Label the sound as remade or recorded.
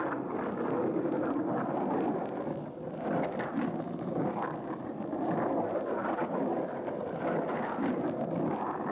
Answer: recorded